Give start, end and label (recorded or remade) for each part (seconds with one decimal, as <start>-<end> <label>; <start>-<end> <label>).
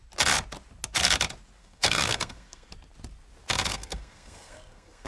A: 0.0-1.6 recorded; 1.6-2.7 remade; 2.7-3.7 recorded; 3.7-5.1 remade